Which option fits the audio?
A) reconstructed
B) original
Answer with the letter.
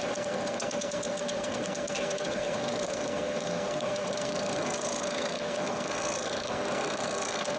A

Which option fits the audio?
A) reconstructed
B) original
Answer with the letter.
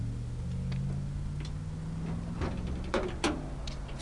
B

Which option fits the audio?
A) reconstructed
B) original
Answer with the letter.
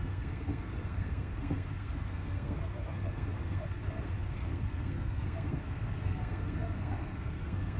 A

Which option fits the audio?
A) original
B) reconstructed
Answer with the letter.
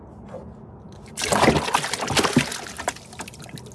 A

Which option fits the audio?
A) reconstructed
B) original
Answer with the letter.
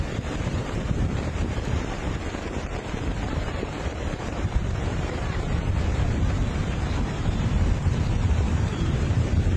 A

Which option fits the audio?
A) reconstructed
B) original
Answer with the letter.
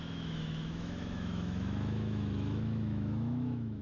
A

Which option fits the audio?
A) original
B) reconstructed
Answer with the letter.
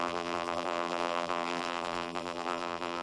B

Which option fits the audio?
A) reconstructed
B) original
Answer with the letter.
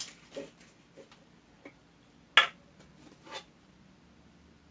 B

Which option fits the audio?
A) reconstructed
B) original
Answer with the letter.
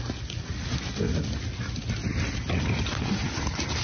B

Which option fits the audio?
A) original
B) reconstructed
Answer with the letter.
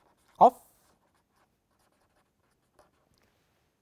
A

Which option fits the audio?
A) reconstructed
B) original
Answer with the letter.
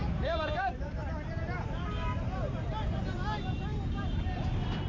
A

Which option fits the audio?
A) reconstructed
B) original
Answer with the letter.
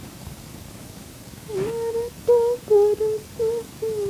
A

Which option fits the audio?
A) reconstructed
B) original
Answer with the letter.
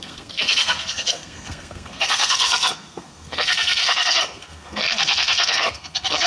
A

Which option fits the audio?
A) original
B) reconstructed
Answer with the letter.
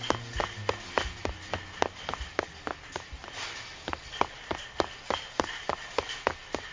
A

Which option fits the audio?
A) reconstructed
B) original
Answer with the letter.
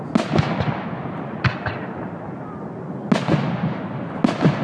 B